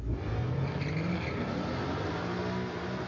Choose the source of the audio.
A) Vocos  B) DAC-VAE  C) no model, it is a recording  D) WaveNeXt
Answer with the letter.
C